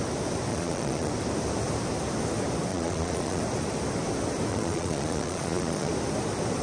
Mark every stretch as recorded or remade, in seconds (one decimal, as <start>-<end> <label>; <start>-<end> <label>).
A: 0.0-0.5 recorded; 0.5-1.1 remade; 1.1-2.7 recorded; 2.7-3.4 remade; 3.4-4.5 recorded; 4.5-5.9 remade; 5.9-6.6 recorded

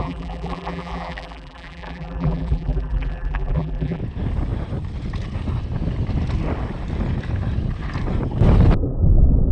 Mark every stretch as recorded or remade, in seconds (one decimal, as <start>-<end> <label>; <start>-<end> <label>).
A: 0.0-4.0 remade; 4.0-9.5 recorded

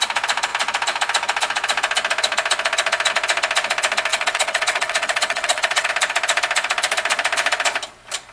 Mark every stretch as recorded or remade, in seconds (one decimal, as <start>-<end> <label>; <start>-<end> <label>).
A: 0.0-4.1 recorded; 4.1-5.9 remade; 5.9-8.3 recorded

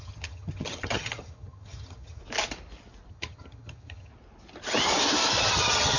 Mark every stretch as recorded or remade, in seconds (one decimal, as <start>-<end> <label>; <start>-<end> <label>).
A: 0.0-2.2 remade; 2.2-3.1 recorded; 3.1-4.1 remade; 4.1-5.4 recorded; 5.4-6.0 remade

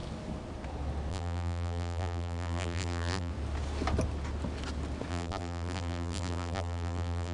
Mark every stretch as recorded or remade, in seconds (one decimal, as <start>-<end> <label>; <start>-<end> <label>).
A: 0.0-1.1 recorded; 1.1-3.3 remade; 3.3-5.1 recorded; 5.1-7.3 remade

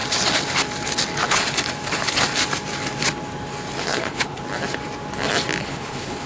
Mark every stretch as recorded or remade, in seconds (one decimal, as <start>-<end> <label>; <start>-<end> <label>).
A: 0.0-3.8 recorded; 3.8-4.4 remade; 4.4-5.6 recorded; 5.6-6.3 remade

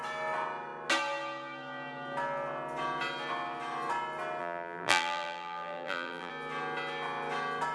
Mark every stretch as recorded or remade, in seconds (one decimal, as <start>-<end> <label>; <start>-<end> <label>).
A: 0.0-4.4 recorded; 4.4-6.3 remade; 6.3-7.7 recorded

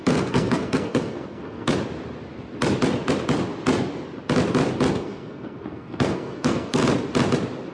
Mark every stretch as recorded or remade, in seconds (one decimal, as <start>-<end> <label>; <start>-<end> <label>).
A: 0.0-1.7 remade; 1.7-4.9 recorded; 4.9-6.8 remade; 6.8-7.7 recorded